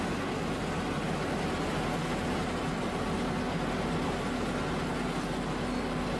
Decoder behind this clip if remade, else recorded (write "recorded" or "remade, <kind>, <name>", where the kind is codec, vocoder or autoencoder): recorded